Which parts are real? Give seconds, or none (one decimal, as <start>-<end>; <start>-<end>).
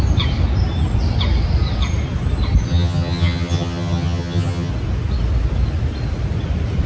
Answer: 0.0-2.7; 4.7-6.9